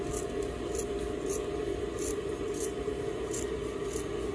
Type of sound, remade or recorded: recorded